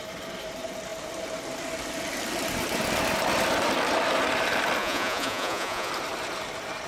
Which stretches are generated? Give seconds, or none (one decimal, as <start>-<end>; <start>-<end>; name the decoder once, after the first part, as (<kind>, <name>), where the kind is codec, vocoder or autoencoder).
4.8-5.9 (vocoder, Vocos)